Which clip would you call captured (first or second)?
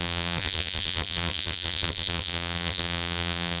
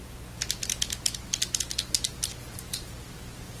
second